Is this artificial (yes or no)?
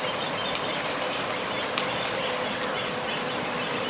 no